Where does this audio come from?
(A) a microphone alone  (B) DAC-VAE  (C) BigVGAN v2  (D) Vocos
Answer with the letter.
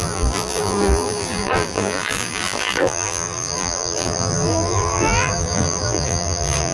C